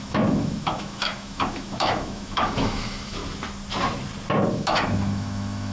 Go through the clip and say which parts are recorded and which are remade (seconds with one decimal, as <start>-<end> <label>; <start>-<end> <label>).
0.0-3.2 remade; 3.2-4.5 recorded; 4.5-5.7 remade